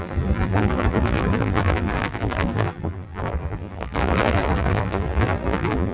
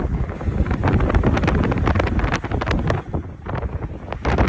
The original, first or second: second